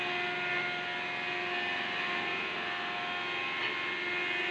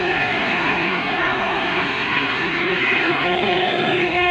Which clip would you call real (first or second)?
first